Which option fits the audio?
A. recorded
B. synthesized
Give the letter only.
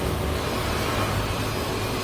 A